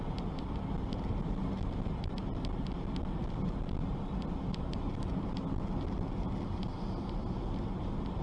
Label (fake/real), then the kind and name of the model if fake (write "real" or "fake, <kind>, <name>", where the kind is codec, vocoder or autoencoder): real